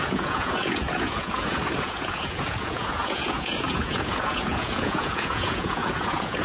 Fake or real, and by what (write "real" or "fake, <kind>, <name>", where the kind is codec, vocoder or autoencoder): fake, vocoder, Vocos